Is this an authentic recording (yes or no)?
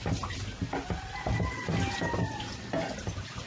yes